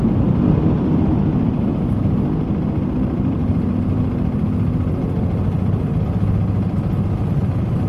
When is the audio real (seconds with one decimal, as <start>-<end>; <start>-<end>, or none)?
0.0-0.6; 1.1-3.4; 6.0-7.9